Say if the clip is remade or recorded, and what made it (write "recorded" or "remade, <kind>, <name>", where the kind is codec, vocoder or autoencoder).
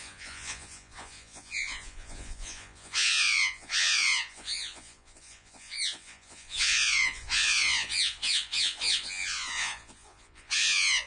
remade, vocoder, Vocos